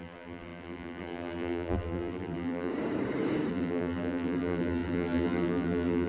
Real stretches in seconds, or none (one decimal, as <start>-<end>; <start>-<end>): 2.7-3.5